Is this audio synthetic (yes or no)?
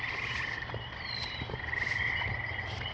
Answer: no